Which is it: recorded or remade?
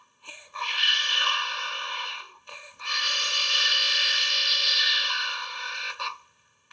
remade